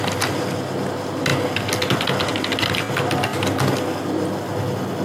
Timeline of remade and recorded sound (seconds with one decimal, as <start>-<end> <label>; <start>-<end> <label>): 0.0-5.0 recorded